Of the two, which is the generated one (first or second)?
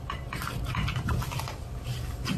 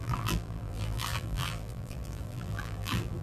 second